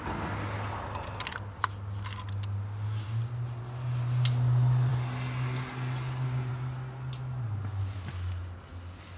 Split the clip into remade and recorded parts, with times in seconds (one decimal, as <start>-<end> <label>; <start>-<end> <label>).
0.0-9.2 recorded